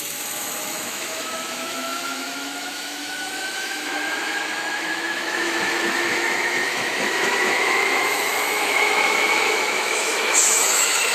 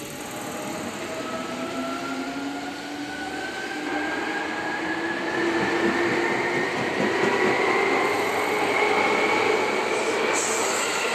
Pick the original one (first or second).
second